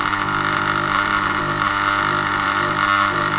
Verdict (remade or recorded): remade